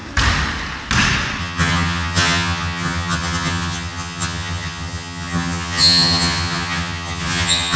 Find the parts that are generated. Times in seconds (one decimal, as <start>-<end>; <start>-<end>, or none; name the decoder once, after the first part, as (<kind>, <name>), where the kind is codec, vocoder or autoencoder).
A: 1.4-7.8 (vocoder, HiFi-GAN)

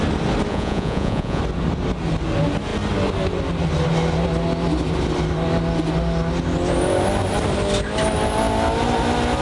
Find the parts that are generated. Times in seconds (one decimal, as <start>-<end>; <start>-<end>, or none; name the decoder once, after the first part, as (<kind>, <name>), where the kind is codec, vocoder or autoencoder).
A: 0.5-1.4 (vocoder, Vocos)

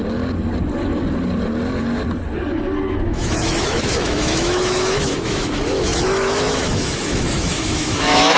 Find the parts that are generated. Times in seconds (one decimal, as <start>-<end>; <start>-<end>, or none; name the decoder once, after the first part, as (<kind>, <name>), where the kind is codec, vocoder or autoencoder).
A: 2.9-8.4 (autoencoder, DAC-VAE)